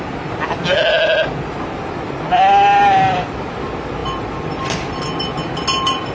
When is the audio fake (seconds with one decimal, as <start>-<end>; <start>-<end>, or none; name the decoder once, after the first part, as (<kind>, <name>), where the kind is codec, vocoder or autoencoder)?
none